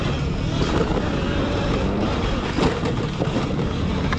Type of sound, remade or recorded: recorded